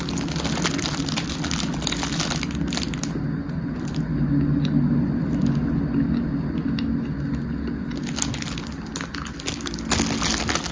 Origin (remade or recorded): recorded